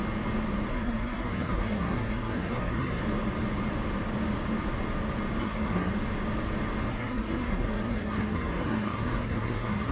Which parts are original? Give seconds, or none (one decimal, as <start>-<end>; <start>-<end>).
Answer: 0.0-0.7; 3.0-5.4; 5.9-6.9